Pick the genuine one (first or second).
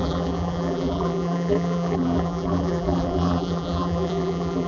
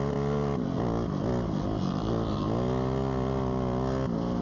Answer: second